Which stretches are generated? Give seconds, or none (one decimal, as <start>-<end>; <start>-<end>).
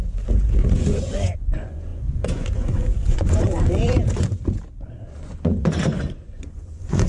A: 0.0-4.4; 5.2-7.1